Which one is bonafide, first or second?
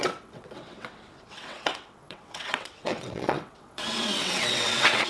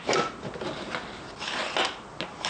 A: second